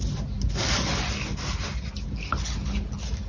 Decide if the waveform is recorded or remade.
recorded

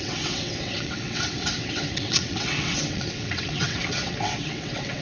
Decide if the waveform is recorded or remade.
remade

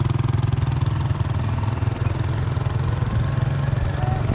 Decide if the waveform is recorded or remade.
recorded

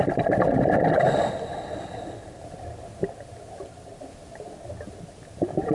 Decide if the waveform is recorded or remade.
recorded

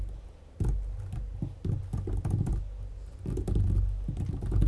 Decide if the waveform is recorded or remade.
recorded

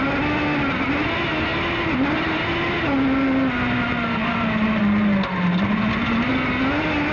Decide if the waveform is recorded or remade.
recorded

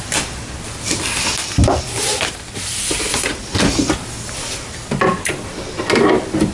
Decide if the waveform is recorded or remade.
recorded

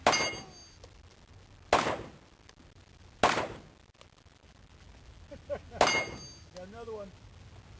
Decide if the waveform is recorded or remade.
recorded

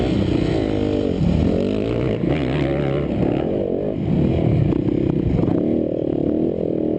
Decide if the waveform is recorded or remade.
recorded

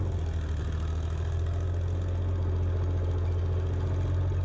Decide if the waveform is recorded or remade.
recorded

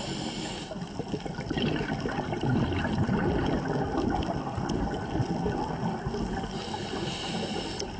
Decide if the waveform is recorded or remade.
recorded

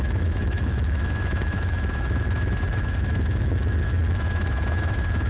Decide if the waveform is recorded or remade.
remade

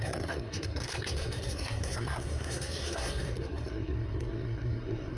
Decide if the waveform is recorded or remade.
remade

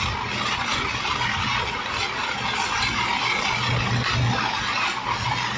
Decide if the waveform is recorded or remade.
recorded